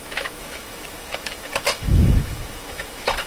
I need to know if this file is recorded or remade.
remade